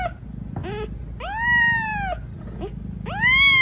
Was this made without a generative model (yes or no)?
yes